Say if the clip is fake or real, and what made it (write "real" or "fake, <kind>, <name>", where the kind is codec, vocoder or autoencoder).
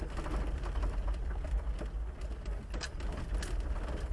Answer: real